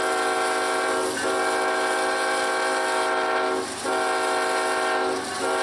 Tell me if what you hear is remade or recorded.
recorded